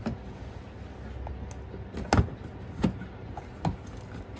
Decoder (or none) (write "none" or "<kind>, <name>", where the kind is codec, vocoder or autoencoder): none